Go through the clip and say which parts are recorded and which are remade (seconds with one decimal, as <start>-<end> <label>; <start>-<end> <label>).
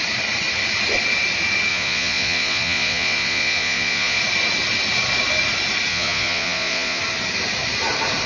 0.0-1.7 recorded; 1.7-4.2 remade; 4.2-5.9 recorded; 5.9-7.0 remade; 7.0-8.3 recorded